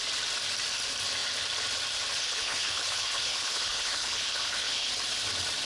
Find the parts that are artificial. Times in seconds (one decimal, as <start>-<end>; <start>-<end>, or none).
2.2-4.9